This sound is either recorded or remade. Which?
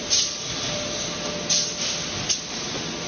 recorded